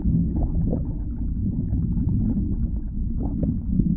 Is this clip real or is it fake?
fake